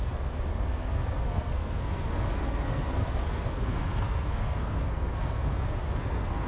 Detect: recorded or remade remade